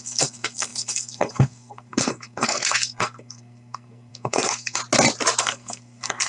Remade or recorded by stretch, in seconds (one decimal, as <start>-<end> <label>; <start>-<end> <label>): 0.0-4.8 remade; 4.8-5.4 recorded; 5.4-6.3 remade